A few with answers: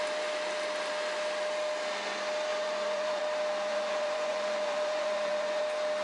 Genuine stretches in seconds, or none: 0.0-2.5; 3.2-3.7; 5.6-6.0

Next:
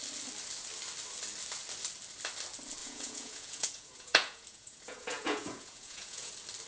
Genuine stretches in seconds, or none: 0.0-2.8; 6.3-6.7